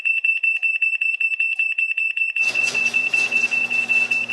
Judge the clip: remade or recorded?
remade